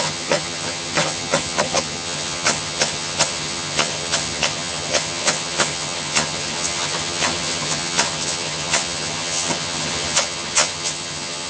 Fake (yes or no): yes